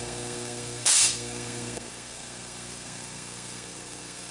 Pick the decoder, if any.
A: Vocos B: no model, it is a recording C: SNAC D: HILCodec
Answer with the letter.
C